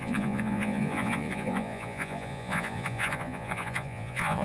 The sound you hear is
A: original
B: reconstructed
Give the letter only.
B